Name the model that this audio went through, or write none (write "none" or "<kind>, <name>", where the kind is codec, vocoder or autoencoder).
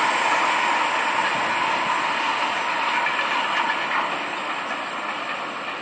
none